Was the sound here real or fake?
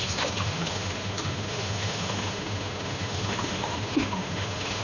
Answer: fake